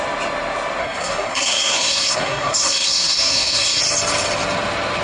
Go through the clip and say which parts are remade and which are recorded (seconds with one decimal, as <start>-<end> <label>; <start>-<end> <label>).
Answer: 0.0-0.8 recorded; 0.8-3.8 remade; 3.8-5.0 recorded